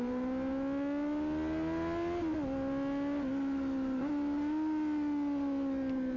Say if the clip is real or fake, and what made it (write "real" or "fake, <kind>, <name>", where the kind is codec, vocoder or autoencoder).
real